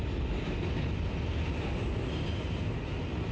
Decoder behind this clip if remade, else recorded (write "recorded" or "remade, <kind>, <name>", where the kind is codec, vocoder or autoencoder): recorded